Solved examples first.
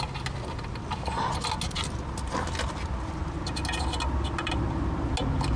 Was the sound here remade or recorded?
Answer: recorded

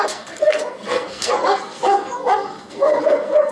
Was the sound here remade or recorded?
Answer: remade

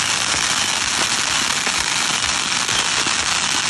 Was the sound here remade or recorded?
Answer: recorded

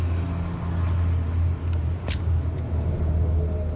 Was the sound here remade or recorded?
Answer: recorded